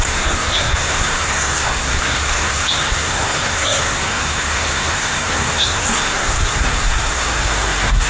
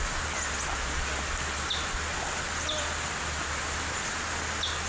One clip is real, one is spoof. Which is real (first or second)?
second